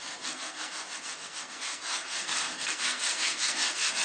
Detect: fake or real fake